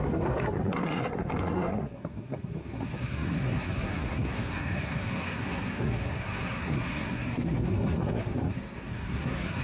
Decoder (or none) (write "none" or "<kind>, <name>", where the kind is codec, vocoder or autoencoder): codec, SNAC